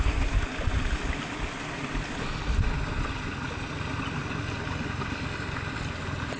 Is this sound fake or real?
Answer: real